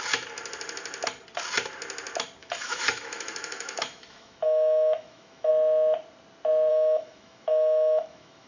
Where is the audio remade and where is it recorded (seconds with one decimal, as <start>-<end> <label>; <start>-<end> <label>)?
0.0-2.4 recorded; 2.4-5.5 remade; 5.5-6.7 recorded; 6.7-8.5 remade